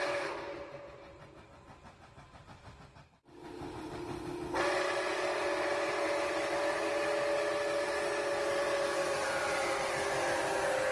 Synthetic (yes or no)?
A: no